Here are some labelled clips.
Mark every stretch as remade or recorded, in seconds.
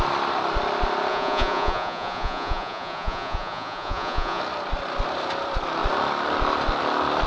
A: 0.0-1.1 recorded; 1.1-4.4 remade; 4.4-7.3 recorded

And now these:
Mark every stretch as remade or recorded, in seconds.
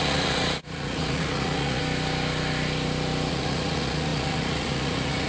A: 0.0-1.8 remade; 1.8-3.3 recorded; 3.3-5.3 remade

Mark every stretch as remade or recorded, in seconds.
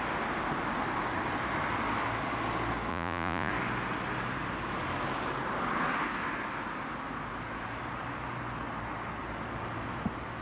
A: 0.0-2.9 recorded; 2.9-3.5 remade; 3.5-10.4 recorded